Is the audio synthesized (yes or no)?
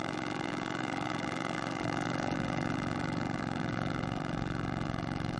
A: yes